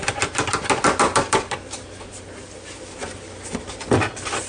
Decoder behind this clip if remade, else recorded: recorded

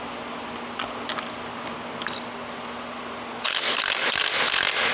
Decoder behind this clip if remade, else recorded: recorded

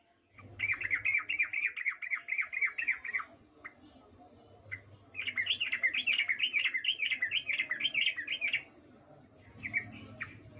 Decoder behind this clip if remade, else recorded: recorded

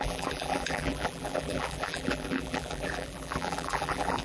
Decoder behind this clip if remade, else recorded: remade, vocoder, BigVGAN v2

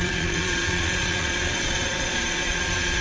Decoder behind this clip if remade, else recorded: remade, vocoder, Vocos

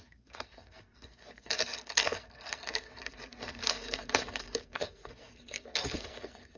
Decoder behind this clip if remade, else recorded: remade, codec, SNAC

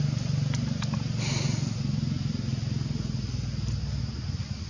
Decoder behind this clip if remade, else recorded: recorded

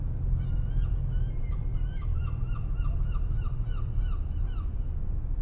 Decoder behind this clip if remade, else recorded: recorded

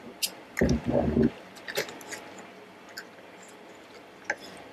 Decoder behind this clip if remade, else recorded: recorded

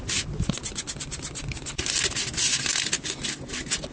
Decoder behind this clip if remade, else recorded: recorded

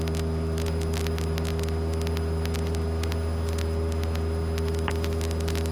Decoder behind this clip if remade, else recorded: recorded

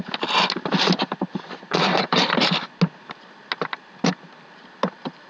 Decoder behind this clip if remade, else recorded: recorded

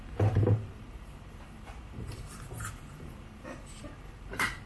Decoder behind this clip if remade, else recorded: remade, vocoder, BigVGAN v2